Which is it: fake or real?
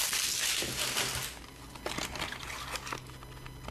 real